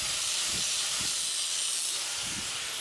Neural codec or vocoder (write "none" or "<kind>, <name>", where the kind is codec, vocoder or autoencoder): none